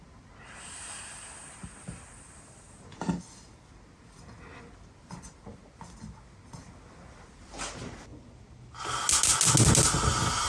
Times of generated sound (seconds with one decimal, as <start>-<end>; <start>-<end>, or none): none